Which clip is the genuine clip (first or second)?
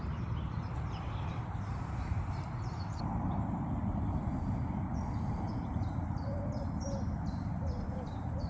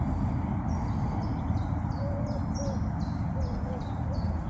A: second